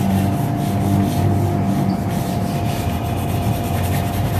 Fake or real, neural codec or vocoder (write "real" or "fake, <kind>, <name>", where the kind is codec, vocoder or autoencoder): real